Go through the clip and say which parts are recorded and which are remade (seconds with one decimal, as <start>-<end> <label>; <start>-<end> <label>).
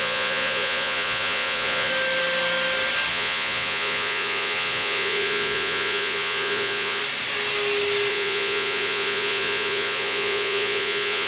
0.0-1.9 remade; 1.9-3.1 recorded; 3.1-7.0 remade; 7.0-8.1 recorded; 8.1-11.3 remade